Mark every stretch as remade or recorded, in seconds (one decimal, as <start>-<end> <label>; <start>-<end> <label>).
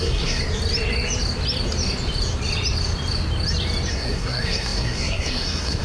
0.0-0.4 remade; 0.4-3.9 recorded; 3.9-5.8 remade